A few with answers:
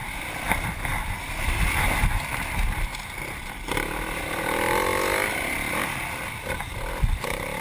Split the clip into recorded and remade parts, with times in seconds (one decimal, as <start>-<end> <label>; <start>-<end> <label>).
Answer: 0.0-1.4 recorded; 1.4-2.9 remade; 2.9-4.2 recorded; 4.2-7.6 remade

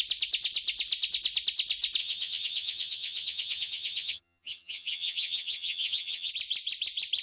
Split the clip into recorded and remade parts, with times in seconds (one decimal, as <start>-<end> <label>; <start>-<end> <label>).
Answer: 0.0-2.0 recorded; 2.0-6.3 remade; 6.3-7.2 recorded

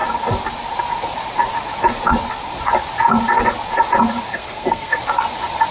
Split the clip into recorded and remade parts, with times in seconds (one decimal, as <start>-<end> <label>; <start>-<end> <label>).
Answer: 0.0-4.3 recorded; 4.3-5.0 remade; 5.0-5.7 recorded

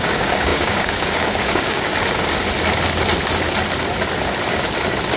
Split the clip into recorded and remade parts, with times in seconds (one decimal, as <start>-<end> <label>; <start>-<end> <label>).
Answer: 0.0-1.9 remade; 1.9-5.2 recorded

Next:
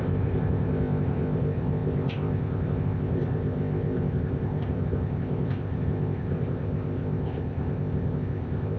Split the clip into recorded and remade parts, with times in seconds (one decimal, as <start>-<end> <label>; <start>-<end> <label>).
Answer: 0.0-8.8 remade